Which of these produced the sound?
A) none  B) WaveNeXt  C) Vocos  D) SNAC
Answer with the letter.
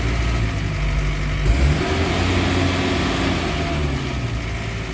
A